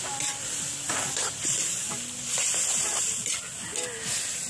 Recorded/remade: recorded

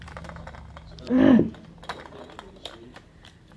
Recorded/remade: recorded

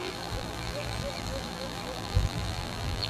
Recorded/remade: remade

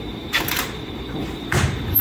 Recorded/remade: remade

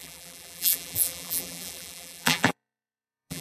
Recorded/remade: remade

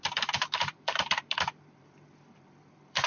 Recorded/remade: remade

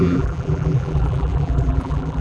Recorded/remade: remade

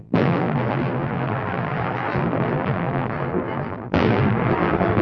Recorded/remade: remade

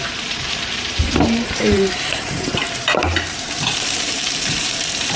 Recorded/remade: remade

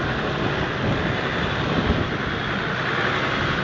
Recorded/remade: recorded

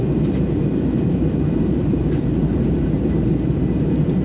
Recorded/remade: remade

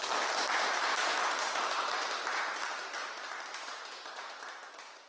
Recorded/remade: remade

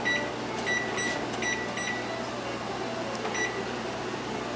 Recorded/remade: recorded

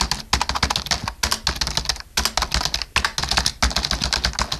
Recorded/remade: recorded